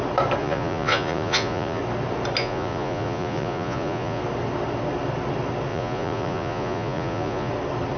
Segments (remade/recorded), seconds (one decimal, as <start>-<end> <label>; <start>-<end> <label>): 0.0-0.4 recorded; 0.4-1.8 remade; 1.8-2.4 recorded; 2.4-4.2 remade; 4.2-5.7 recorded; 5.7-7.5 remade; 7.5-8.0 recorded